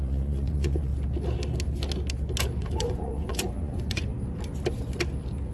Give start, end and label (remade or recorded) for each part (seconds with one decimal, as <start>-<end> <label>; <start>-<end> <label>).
0.0-0.9 remade; 0.9-2.6 recorded; 2.6-4.1 remade; 4.1-5.5 recorded